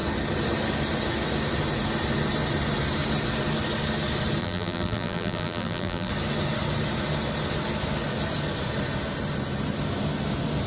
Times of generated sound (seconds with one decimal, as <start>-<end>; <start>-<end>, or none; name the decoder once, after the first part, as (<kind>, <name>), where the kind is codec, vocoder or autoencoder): 4.4-6.1 (vocoder, BigVGAN v2)